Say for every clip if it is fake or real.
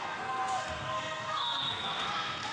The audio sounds fake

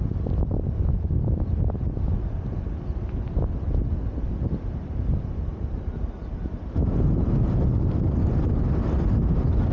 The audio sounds real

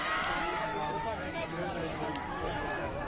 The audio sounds fake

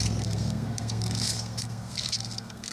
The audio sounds fake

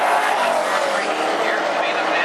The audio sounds real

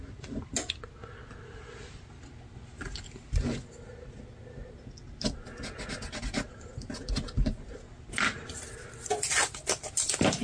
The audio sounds real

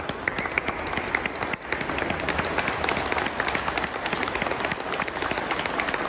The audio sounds real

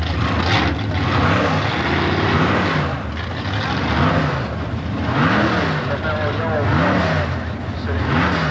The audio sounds real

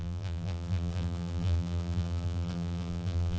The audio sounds fake